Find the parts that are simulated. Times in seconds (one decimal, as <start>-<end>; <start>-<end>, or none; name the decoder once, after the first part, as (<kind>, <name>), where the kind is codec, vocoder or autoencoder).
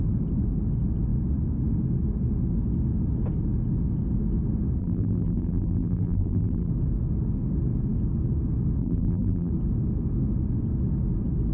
4.8-6.7 (vocoder, BigVGAN v2); 8.8-9.5